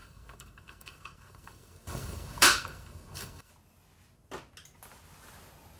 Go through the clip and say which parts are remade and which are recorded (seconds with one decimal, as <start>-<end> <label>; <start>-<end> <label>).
0.0-3.5 remade; 3.5-5.8 recorded